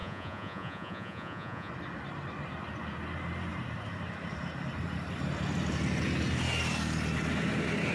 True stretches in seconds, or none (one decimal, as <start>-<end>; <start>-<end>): 1.7-7.9